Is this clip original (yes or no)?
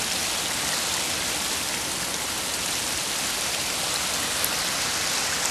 yes